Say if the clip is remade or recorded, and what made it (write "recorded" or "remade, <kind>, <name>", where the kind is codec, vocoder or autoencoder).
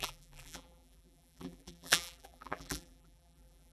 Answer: remade, vocoder, BigVGAN v2